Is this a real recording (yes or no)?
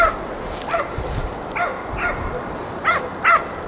yes